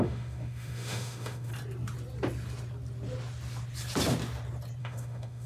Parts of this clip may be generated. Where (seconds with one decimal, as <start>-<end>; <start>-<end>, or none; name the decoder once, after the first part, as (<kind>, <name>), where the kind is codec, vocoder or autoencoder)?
0.0-1.5 (autoencoder, DAC-VAE); 4.8-5.5